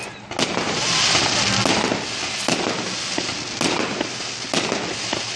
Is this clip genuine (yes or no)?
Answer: yes